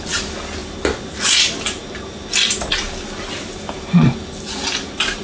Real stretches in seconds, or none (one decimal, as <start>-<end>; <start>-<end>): 0.0-5.2